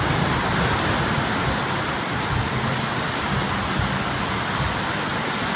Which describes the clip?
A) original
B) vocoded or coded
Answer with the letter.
A